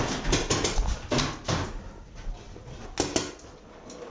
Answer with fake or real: real